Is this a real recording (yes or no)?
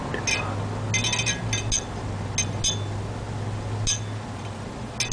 yes